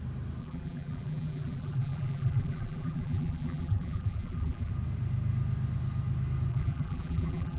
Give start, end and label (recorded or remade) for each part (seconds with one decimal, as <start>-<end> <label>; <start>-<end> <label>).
0.0-0.4 recorded; 0.4-4.7 remade; 4.7-6.5 recorded; 6.5-7.6 remade